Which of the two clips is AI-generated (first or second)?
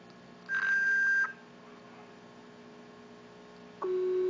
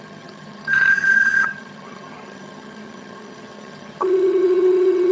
second